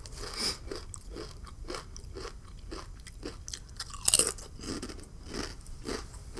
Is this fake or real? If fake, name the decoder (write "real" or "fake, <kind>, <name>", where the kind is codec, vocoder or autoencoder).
real